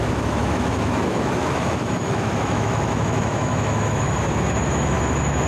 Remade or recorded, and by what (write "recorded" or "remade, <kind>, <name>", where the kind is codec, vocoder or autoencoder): remade, autoencoder, DAC-VAE